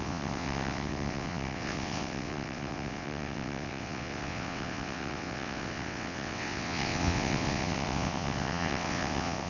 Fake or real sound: fake